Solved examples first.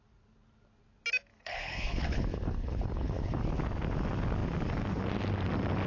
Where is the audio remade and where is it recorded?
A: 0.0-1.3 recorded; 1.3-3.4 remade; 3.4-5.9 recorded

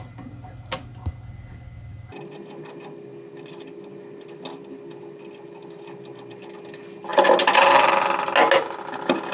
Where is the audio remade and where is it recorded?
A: 0.0-9.3 recorded

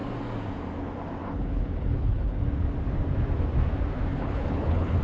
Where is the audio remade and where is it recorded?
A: 0.0-1.2 recorded; 1.2-2.4 remade; 2.4-4.1 recorded; 4.1-5.0 remade